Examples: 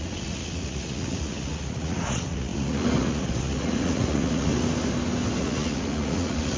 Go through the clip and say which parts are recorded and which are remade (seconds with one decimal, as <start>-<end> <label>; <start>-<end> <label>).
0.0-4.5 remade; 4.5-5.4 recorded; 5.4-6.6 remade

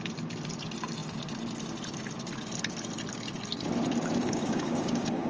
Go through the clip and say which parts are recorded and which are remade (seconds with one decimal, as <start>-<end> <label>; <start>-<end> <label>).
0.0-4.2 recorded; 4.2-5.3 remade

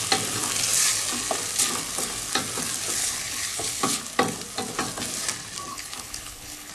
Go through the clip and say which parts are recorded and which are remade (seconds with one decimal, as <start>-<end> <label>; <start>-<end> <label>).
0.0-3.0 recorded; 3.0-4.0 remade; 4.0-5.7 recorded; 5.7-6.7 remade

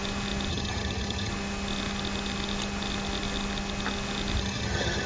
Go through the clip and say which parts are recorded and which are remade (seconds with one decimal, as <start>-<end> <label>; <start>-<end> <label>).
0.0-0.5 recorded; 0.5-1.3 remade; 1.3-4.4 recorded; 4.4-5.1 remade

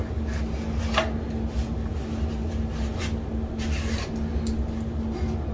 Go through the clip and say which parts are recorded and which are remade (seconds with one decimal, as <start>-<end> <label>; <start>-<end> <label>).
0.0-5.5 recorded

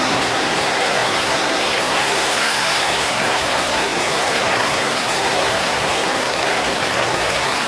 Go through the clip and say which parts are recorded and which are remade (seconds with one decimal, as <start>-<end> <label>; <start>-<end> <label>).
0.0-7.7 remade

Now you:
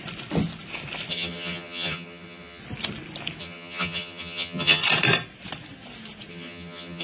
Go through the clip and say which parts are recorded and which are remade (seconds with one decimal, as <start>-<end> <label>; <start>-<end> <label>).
0.0-1.1 recorded; 1.1-2.6 remade; 2.6-3.4 recorded; 3.4-4.8 remade; 4.8-6.3 recorded; 6.3-7.0 remade